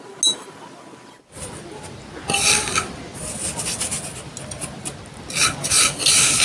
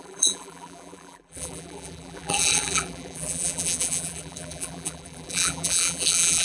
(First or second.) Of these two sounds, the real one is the first